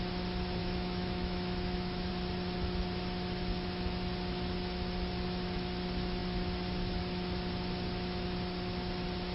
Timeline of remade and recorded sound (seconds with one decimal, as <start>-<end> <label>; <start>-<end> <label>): 0.0-0.6 recorded; 0.6-2.1 remade; 2.1-9.3 recorded